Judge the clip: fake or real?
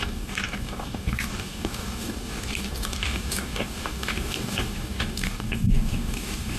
fake